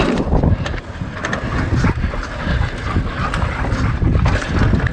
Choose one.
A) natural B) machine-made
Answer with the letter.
A